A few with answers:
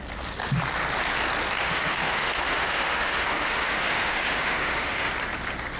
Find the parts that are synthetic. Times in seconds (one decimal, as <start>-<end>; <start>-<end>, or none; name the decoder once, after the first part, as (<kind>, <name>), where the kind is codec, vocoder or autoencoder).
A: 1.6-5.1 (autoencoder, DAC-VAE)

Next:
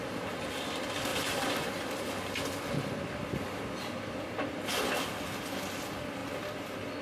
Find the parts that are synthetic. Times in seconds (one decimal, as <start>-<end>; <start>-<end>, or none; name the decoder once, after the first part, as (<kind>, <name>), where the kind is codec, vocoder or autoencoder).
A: none

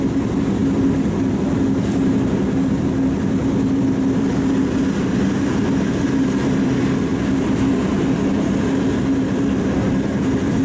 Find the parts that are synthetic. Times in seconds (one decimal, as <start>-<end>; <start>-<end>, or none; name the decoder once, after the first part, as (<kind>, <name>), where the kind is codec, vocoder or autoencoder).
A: none